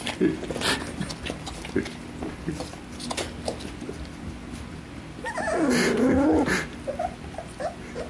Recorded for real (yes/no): yes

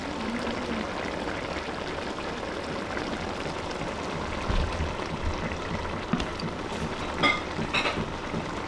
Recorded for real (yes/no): yes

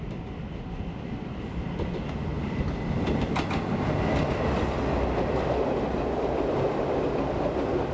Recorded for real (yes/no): yes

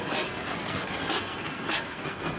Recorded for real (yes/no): no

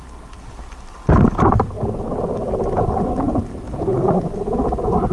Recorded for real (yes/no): yes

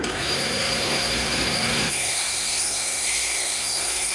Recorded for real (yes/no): no